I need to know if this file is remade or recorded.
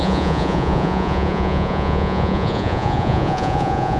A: remade